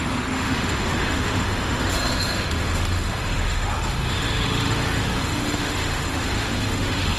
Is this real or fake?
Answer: fake